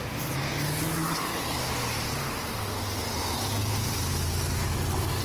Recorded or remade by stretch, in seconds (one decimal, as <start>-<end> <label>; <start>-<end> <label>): 0.0-5.2 recorded